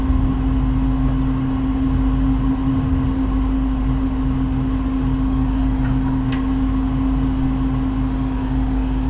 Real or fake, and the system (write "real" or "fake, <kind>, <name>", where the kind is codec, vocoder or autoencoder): real